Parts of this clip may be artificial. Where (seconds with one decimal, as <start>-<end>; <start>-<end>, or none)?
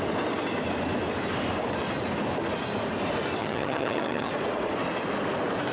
3.4-4.3